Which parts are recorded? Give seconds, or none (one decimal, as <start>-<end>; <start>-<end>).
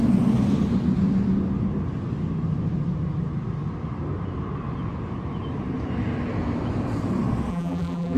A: 0.0-7.5